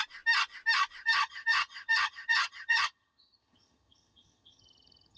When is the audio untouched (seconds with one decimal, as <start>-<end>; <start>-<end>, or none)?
0.0-1.0